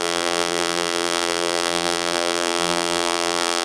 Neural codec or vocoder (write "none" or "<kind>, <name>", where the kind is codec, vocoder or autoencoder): vocoder, BigVGAN v2